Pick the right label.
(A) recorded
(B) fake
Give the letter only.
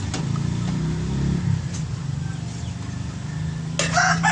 A